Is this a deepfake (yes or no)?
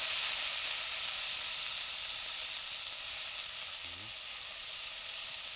no